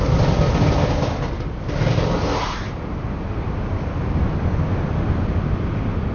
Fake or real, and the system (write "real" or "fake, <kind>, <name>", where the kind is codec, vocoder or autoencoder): real